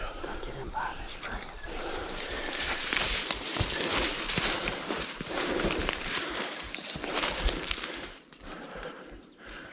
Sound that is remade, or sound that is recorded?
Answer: remade